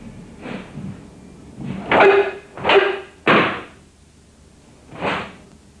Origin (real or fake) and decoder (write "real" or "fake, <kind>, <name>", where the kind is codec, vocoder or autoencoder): real